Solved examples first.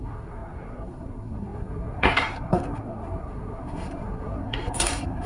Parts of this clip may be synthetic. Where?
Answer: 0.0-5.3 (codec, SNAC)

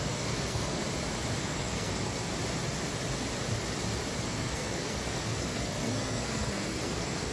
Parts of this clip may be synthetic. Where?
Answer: 0.0-0.8 (codec, SNAC); 1.4-2.3; 4.2-7.3

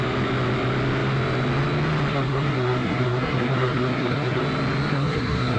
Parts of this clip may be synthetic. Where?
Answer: 2.1-4.4 (codec, SNAC); 4.9-5.6

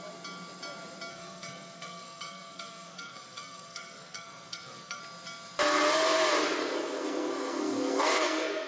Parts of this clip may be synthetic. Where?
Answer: 1.1-5.0 (codec, SNAC); 6.6-8.7